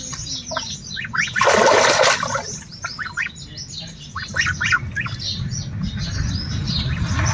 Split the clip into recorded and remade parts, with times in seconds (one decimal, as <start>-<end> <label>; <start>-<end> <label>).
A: 0.0-7.3 recorded